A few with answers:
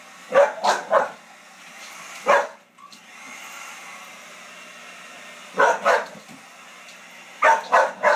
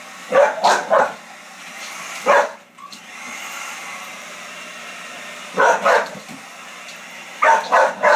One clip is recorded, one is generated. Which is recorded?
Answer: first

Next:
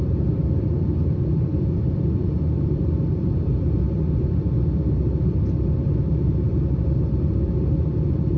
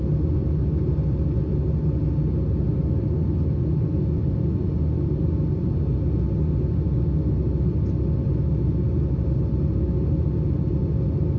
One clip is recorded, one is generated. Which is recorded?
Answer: second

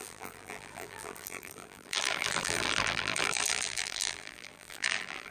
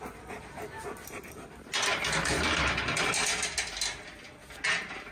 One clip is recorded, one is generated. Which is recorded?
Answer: second